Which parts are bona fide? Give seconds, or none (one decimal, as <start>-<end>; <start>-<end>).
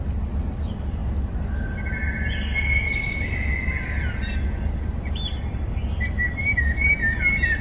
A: 0.0-7.6